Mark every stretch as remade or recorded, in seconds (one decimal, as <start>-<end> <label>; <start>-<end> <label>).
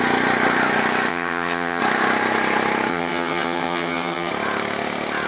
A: 0.0-1.1 recorded; 1.1-1.8 remade; 1.8-2.9 recorded; 2.9-4.3 remade; 4.3-5.3 recorded